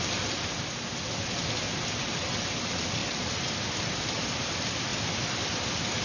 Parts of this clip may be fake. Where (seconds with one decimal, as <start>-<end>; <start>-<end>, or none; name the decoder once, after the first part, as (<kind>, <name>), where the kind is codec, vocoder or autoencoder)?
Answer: 3.0-4.2 (vocoder, BigVGAN v2); 4.9-6.0